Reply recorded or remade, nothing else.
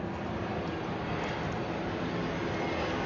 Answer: recorded